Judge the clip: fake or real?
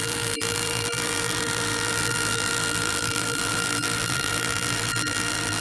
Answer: fake